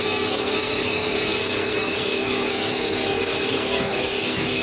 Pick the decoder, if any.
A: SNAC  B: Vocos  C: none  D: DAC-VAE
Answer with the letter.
A